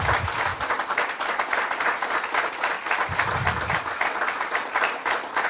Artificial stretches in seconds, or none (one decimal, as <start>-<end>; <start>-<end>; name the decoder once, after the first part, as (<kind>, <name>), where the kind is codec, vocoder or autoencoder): none